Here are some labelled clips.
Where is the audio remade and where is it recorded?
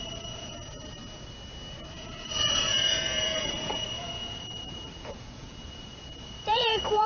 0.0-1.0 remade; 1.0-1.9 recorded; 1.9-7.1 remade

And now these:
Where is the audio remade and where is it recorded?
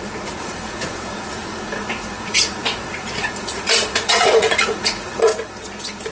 0.0-5.3 remade; 5.3-6.1 recorded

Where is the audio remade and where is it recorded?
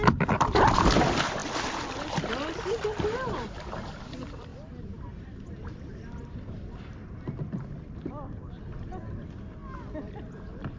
0.0-4.5 remade; 4.5-5.2 recorded; 5.2-9.6 remade; 9.6-10.3 recorded; 10.3-10.8 remade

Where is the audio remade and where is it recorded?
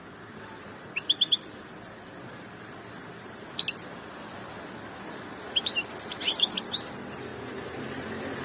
0.0-8.4 recorded